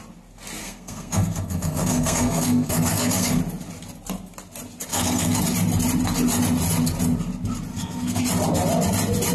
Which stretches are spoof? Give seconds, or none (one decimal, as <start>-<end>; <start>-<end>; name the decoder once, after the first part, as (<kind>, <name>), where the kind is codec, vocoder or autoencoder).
0.6-3.4 (codec, SNAC); 4.9-5.4; 7.7-8.2